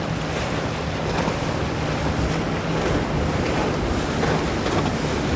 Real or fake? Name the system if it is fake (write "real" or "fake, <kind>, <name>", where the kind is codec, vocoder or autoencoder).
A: real